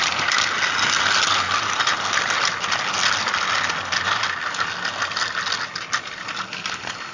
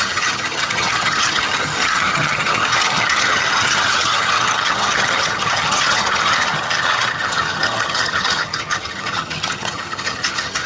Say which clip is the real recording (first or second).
first